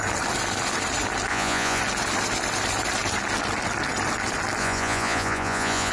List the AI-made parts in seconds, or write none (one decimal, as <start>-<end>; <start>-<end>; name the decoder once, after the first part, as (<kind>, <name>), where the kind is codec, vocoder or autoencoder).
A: 1.3-1.8 (vocoder, Vocos); 4.6-5.9